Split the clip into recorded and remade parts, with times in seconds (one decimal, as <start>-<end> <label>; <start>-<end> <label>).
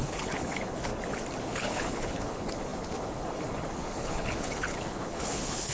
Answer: 0.0-0.9 remade; 0.9-1.4 recorded; 1.4-5.7 remade